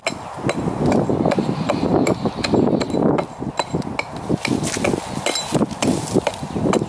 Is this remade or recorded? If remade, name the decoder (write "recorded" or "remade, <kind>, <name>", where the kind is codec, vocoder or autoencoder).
recorded